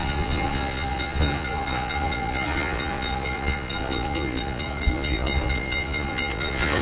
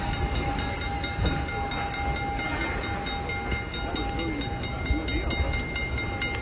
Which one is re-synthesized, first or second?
first